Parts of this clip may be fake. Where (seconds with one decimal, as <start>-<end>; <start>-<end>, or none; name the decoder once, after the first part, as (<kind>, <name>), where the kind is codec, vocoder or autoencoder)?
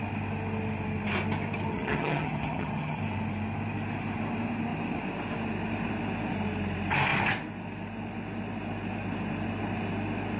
1.7-3.0 (vocoder, HiFi-GAN)